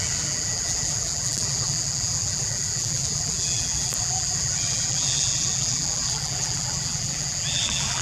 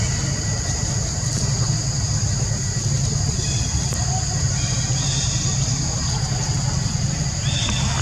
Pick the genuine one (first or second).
second